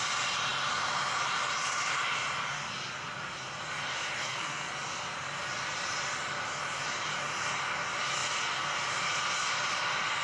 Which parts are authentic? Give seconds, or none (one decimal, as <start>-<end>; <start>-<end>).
0.0-4.2; 4.7-10.2